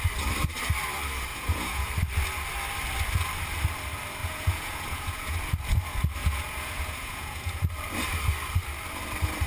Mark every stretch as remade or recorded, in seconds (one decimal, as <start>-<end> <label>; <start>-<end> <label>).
0.0-1.3 recorded; 1.3-1.9 remade; 1.9-4.2 recorded; 4.2-5.3 remade; 5.3-6.2 recorded; 6.2-7.6 remade; 7.6-9.5 recorded